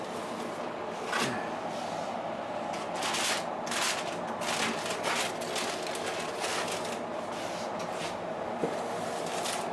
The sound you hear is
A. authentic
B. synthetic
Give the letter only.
A